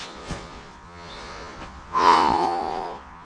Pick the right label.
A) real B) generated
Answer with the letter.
B